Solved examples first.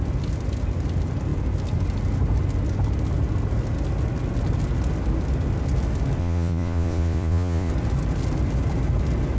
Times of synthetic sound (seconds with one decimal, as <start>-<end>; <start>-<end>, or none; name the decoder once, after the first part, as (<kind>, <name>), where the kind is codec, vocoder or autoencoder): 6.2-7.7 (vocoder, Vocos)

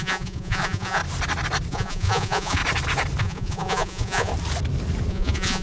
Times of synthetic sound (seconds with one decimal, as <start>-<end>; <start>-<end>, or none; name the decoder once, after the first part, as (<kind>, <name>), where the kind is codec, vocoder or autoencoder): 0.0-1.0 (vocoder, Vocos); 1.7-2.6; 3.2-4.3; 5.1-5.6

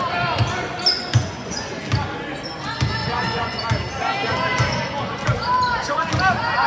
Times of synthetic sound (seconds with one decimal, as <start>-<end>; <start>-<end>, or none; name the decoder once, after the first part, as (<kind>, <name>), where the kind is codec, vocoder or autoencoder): 0.9-1.7 (vocoder, Vocos); 3.0-3.6